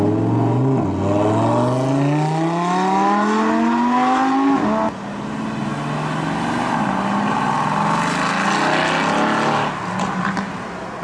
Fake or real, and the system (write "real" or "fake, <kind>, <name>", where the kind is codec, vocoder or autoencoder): real